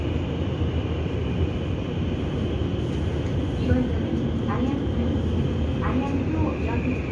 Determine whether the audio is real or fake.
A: real